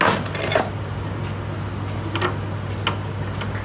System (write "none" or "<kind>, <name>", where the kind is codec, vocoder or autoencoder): none